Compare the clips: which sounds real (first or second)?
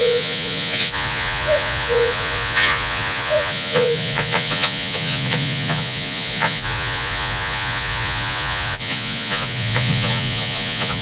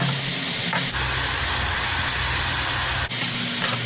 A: second